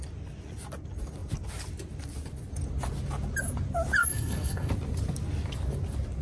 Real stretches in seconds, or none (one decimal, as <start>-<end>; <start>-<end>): 0.0-4.0; 4.7-6.2